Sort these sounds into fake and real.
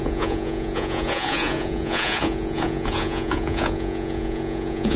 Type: fake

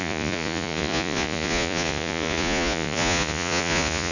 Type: fake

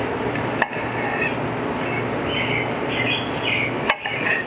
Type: real